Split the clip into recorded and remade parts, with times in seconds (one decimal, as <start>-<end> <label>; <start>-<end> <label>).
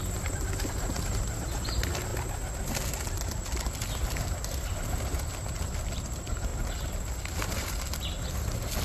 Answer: 0.0-8.8 recorded